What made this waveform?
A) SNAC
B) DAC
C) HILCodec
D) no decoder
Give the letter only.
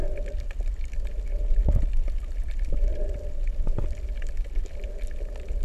D